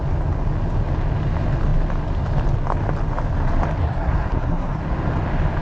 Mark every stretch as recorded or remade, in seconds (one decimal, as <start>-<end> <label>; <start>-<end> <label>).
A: 0.0-3.8 recorded; 3.8-4.8 remade; 4.8-5.6 recorded

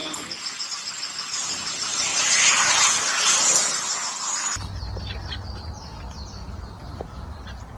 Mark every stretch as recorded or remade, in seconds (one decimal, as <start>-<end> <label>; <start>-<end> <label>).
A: 0.0-7.8 recorded